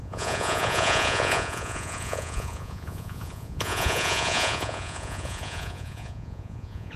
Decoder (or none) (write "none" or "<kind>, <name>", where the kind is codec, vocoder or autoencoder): vocoder, Vocos